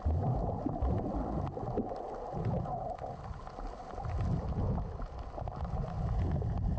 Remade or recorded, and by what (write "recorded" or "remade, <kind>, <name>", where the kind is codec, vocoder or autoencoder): recorded